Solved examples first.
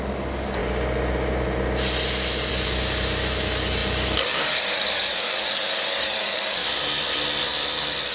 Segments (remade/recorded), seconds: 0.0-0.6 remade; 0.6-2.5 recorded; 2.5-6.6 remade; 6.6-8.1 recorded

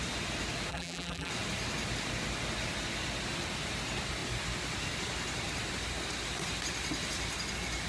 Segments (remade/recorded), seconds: 0.0-0.7 recorded; 0.7-1.3 remade; 1.3-7.9 recorded

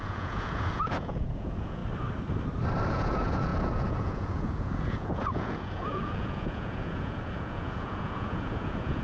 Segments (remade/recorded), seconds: 0.0-1.8 remade; 1.8-2.9 recorded; 2.9-9.0 remade

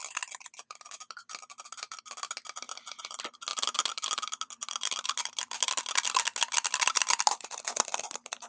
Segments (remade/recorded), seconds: 0.0-8.5 recorded

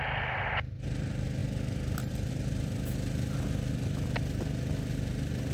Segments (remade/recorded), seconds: 0.0-5.5 recorded

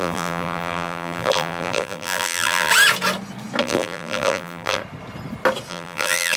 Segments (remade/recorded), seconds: 0.0-2.7 remade; 2.7-3.6 recorded; 3.6-4.8 remade; 4.8-5.7 recorded; 5.7-6.4 remade

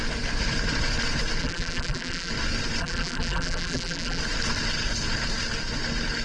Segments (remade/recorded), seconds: 0.0-1.4 recorded; 1.4-2.3 remade; 2.3-2.8 recorded; 2.8-4.2 remade; 4.2-6.2 recorded